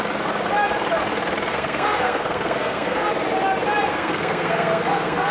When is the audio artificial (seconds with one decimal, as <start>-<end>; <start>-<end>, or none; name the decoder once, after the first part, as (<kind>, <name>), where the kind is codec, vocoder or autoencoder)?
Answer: 1.5-3.1 (codec, SNAC); 3.9-5.3